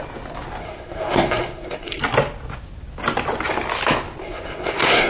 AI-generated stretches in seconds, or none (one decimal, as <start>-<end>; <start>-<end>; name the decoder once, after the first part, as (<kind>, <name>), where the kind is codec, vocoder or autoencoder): 0.6-2.0 (codec, SNAC); 4.2-5.1

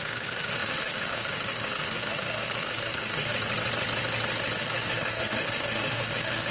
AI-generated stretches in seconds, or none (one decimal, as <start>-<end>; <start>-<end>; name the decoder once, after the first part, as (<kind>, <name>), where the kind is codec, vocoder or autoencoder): 0.0-3.3 (autoencoder, DAC-VAE); 4.6-6.5

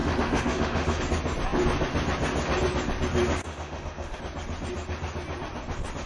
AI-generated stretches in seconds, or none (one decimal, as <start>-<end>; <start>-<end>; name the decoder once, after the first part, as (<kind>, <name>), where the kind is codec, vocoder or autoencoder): 0.0-1.0 (autoencoder, DAC-VAE); 3.4-4.2

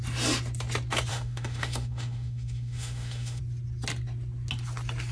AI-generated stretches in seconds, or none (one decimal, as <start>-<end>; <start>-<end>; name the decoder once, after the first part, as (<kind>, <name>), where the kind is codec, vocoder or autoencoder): 1.1-3.4 (autoencoder, DAC-VAE)

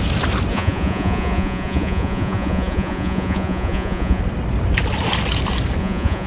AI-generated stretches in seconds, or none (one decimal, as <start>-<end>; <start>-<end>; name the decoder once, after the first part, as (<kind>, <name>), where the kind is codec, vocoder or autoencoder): 0.5-4.2 (vocoder, Vocos); 5.8-6.3

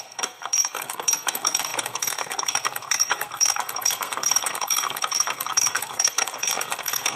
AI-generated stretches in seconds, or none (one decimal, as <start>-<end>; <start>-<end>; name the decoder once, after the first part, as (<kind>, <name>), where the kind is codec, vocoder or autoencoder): 0.0-7.2 (codec, SNAC)

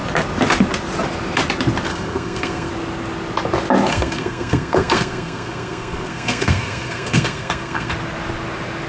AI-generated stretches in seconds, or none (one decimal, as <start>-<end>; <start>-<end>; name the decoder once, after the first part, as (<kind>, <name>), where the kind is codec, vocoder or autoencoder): 1.9-2.7 (codec, SNAC); 3.9-7.9